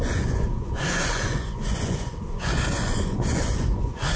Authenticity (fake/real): fake